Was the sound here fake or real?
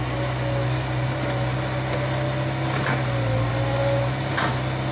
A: real